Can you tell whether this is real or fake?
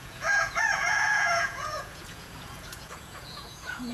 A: fake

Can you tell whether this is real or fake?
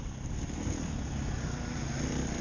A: real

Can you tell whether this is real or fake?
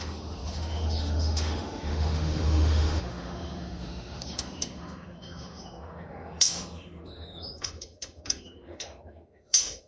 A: fake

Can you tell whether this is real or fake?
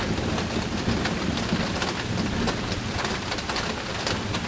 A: real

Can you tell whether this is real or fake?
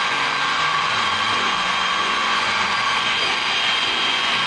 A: fake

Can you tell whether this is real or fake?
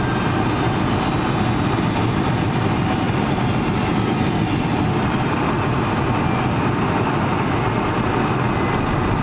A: real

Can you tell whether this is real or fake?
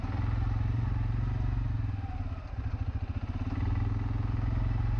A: real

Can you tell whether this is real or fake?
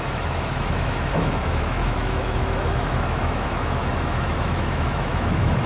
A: fake